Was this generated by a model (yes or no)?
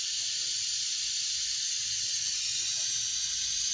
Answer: no